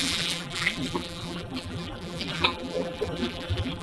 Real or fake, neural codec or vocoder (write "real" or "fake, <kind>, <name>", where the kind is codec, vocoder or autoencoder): fake, vocoder, BigVGAN v2